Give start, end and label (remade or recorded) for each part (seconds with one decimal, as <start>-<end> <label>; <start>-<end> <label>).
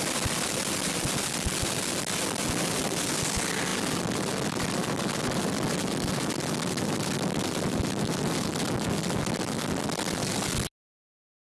0.0-11.5 recorded